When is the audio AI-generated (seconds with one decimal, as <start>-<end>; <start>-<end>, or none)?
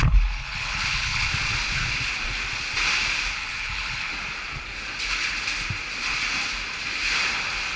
0.0-1.3; 3.3-4.1